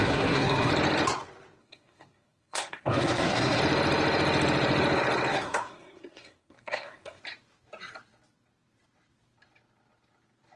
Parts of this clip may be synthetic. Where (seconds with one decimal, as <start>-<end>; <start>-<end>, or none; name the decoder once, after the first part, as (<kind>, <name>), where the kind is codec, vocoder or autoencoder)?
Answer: 0.0-0.7 (codec, SNAC); 1.6-3.6; 5.3-7.2